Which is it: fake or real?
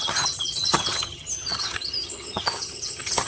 fake